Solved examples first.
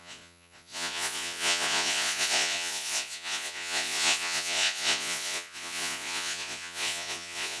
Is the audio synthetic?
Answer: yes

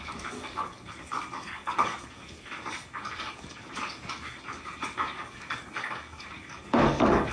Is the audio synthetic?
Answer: yes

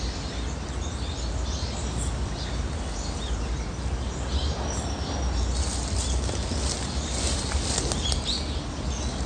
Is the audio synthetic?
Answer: no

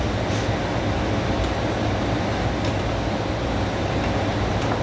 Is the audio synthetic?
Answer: no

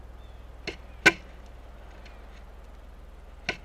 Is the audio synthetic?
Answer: no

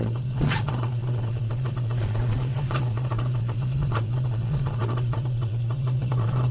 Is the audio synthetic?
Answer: yes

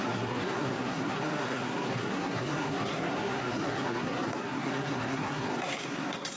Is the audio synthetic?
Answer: yes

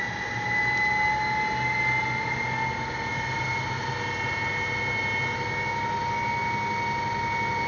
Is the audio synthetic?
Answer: no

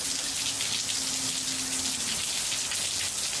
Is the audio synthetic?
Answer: no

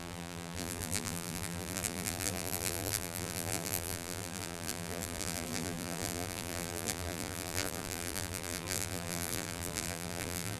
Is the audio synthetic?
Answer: yes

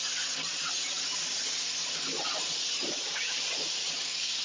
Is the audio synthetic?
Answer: no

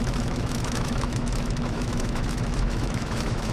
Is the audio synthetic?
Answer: yes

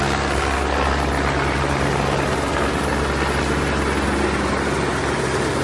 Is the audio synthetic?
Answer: no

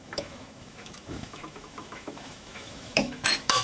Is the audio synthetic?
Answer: yes